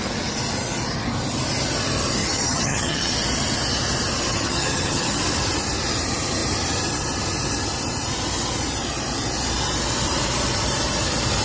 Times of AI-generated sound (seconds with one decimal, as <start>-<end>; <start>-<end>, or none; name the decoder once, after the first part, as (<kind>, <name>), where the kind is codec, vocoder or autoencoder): 2.2-3.1 (vocoder, HiFi-GAN); 4.3-5.2